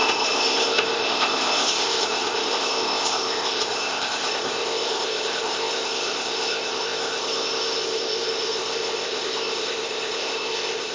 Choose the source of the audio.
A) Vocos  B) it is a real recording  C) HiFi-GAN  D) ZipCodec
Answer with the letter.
D